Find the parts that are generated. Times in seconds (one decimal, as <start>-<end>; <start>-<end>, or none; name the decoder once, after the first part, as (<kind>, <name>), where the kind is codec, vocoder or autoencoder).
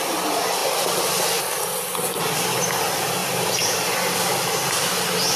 3.2-3.9 (vocoder, BigVGAN v2)